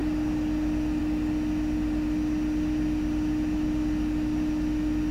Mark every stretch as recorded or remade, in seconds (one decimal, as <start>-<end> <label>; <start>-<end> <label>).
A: 0.0-5.1 recorded